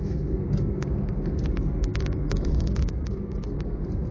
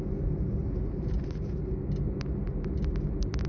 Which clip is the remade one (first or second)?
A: first